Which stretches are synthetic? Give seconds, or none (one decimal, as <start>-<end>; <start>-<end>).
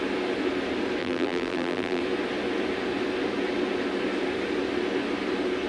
1.0-2.0